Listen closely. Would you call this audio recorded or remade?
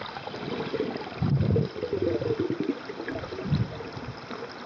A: recorded